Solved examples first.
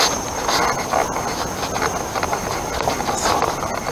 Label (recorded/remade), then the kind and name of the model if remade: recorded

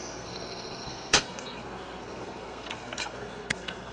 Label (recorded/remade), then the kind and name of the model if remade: remade, codec, SNAC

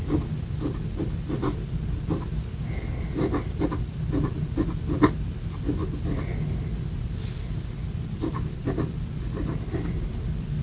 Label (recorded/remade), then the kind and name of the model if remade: recorded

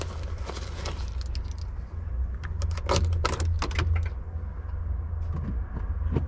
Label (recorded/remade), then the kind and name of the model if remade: recorded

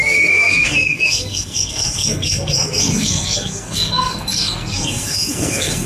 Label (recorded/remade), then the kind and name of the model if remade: remade, codec, SNAC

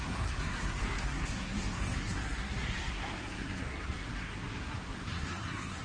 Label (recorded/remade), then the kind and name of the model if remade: remade, codec, SNAC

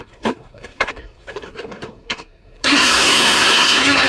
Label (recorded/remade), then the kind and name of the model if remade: remade, codec, SNAC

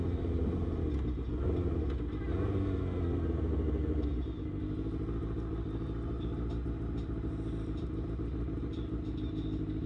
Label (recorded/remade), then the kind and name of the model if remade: recorded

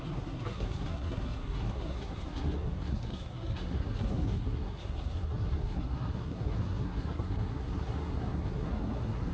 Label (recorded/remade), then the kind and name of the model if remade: remade, codec, SNAC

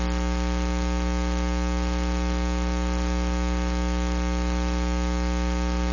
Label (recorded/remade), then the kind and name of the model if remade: recorded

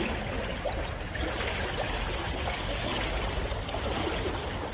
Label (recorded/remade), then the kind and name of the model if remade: recorded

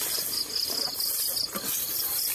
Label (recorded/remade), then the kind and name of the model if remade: recorded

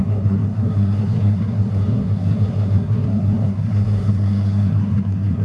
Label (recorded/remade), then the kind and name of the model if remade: remade, codec, SNAC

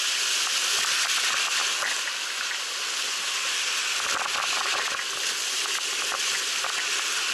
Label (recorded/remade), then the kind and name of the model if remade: recorded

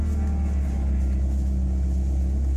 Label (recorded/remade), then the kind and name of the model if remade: recorded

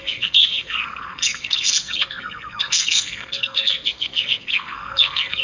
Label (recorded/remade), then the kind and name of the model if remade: remade, codec, SNAC